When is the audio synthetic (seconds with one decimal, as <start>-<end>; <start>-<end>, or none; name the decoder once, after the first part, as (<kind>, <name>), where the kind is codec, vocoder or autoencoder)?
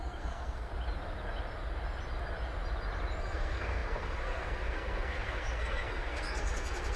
0.0-0.7 (codec, SNAC); 3.2-7.0